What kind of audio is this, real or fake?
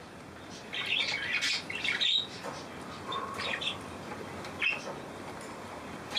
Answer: real